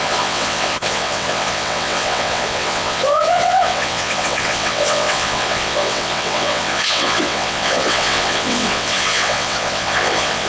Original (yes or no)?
no